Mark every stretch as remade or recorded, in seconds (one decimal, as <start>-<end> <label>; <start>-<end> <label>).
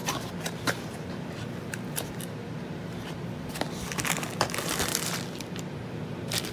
0.0-6.5 recorded